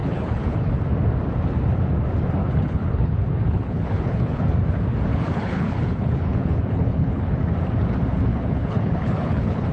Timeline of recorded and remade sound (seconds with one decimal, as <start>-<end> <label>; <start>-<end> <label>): 0.0-0.7 remade; 0.7-2.4 recorded; 2.4-4.5 remade; 4.5-5.1 recorded; 5.1-7.4 remade; 7.4-8.3 recorded; 8.3-9.7 remade